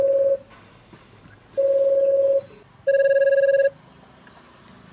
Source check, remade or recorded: recorded